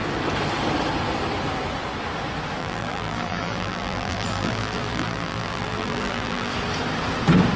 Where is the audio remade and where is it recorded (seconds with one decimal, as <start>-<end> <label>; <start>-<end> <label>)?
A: 0.0-2.6 recorded; 2.6-6.5 remade; 6.5-7.6 recorded